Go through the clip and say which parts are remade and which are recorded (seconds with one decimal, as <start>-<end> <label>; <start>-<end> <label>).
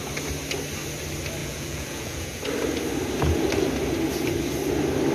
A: 0.0-1.4 recorded; 1.4-2.4 remade; 2.4-5.1 recorded